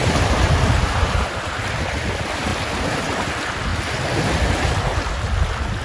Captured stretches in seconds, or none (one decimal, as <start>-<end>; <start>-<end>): 1.8-5.8